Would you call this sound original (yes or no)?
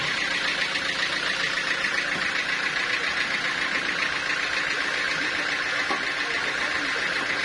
yes